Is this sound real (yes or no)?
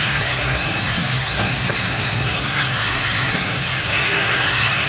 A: no